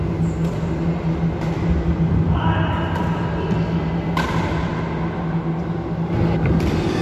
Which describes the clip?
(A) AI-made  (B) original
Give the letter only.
B